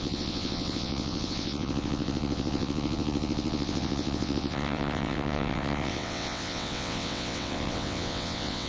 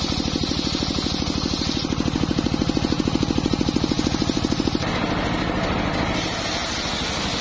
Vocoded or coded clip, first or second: first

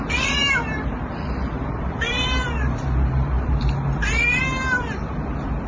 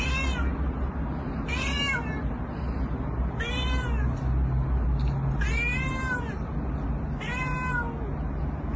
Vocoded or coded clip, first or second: first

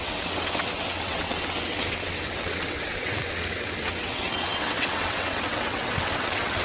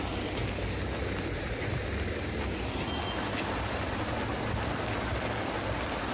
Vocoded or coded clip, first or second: first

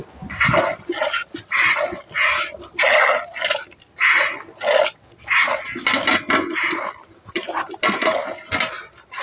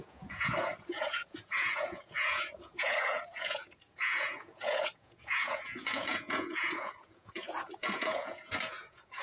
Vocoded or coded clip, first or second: second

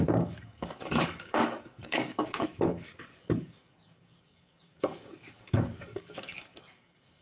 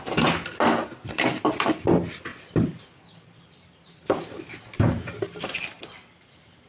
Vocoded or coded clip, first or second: first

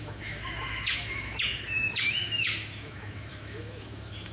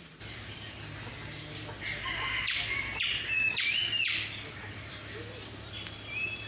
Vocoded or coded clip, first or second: first